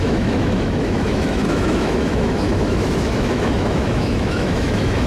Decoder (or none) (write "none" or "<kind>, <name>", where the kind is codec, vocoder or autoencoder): autoencoder, DAC-VAE